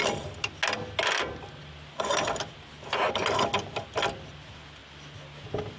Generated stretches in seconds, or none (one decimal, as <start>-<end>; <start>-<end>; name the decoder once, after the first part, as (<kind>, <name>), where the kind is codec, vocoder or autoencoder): none